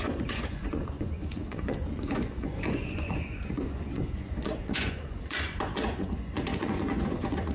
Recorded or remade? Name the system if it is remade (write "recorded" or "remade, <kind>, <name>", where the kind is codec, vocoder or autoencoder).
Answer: remade, vocoder, Vocos